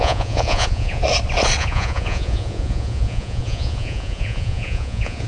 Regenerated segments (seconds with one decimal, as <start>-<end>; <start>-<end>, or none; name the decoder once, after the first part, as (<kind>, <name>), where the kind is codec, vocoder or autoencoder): 0.0-1.0 (vocoder, Vocos); 1.6-5.3